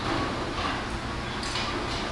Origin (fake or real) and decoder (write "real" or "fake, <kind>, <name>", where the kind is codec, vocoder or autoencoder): real